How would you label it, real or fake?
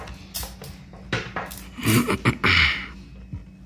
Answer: real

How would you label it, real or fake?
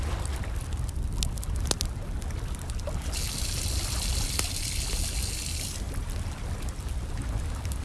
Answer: real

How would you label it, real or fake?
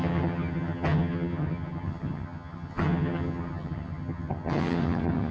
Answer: fake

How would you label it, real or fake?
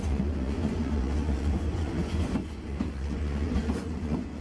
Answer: fake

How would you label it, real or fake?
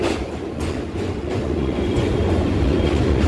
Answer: fake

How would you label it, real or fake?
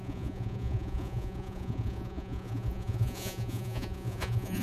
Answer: fake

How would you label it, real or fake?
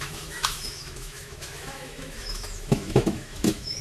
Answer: fake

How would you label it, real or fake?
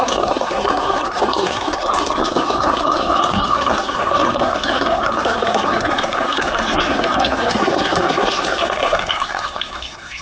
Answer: fake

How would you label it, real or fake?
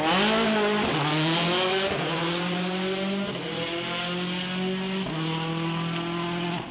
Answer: real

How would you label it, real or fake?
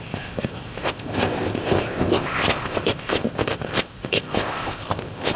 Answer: fake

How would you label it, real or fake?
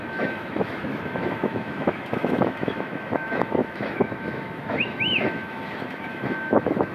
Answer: fake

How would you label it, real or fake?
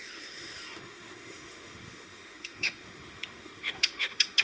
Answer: fake